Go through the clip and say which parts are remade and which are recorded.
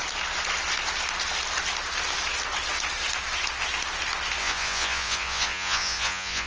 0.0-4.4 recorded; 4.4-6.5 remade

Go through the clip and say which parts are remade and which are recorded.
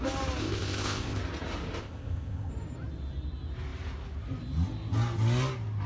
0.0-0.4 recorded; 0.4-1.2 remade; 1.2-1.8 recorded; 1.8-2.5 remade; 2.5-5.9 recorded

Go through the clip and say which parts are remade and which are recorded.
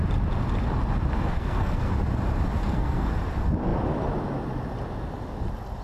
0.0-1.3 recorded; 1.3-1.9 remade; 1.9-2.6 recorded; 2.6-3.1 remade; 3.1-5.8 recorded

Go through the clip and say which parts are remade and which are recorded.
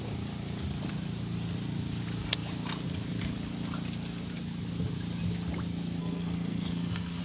0.0-6.0 recorded; 6.0-7.2 remade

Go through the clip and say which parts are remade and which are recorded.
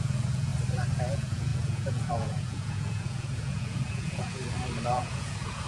0.0-0.5 remade; 0.5-1.1 recorded; 1.1-4.4 remade; 4.4-4.9 recorded; 4.9-5.7 remade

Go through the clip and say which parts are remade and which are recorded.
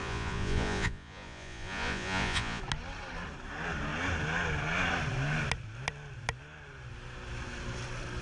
0.0-2.6 remade; 2.6-8.2 recorded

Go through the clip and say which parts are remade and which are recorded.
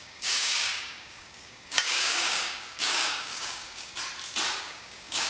0.0-3.9 remade; 3.9-4.6 recorded; 4.6-5.3 remade